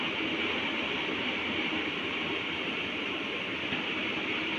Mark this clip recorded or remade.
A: recorded